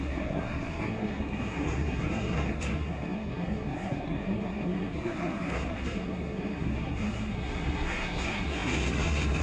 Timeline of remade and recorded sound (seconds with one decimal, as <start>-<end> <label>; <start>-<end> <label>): 0.0-9.4 remade